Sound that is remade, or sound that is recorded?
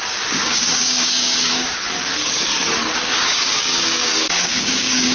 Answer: remade